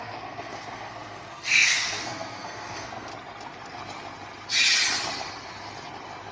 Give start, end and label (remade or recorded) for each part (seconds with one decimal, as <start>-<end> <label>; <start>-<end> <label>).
0.0-3.1 remade; 3.1-6.3 recorded